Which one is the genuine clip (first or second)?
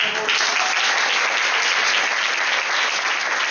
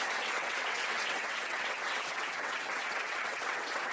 first